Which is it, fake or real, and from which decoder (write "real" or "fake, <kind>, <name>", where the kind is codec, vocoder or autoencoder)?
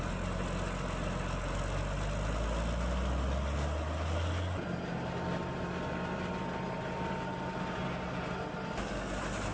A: real